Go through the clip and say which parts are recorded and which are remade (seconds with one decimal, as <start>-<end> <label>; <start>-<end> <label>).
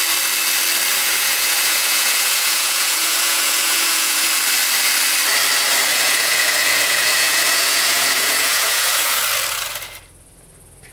0.0-1.0 recorded; 1.0-4.3 remade; 4.3-5.9 recorded; 5.9-9.2 remade; 9.2-10.9 recorded